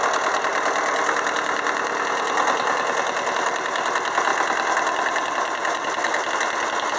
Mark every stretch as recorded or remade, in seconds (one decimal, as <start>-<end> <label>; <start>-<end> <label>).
0.0-0.5 recorded; 0.5-1.3 remade; 1.3-4.3 recorded; 4.3-6.3 remade; 6.3-7.0 recorded